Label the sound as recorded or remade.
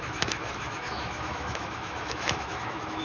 remade